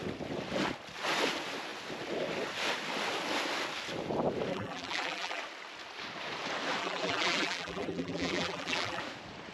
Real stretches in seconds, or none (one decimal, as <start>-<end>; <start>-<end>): 0.0-4.5; 5.4-6.8; 9.0-9.5